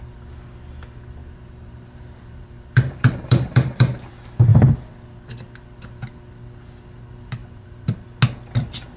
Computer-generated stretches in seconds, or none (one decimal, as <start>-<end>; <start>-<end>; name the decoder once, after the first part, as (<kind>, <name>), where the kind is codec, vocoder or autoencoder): 1.2-4.1 (vocoder, BigVGAN v2); 7.4-8.0